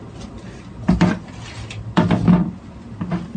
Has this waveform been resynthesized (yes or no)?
no